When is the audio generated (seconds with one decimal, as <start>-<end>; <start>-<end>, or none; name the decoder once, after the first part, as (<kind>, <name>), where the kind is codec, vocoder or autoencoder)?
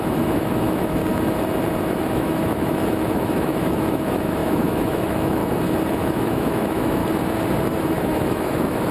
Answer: 0.0-1.0 (autoencoder, DAC-VAE); 1.8-5.4; 5.9-7.0; 7.8-8.9